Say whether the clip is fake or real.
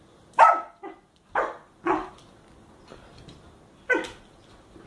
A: real